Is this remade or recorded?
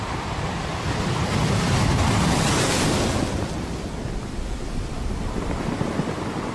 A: recorded